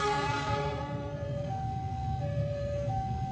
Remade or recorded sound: remade